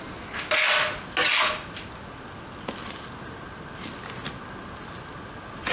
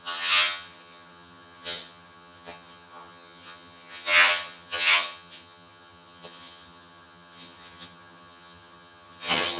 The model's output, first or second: second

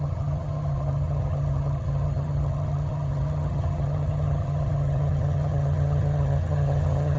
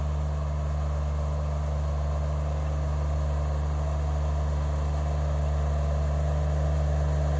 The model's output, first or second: first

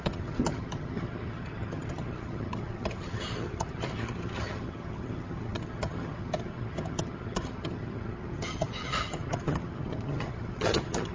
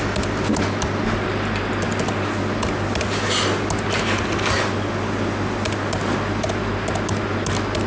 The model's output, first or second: first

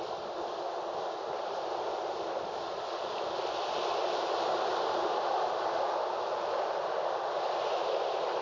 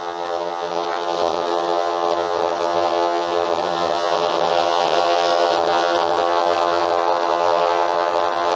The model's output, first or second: second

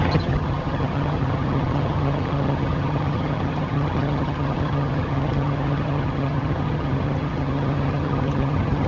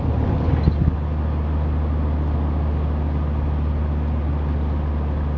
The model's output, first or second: first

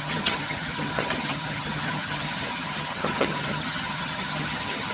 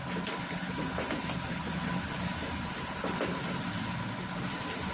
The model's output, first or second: first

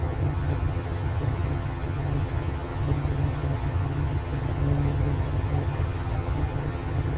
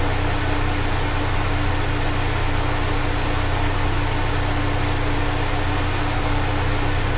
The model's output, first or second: first